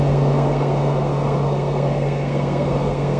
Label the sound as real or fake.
fake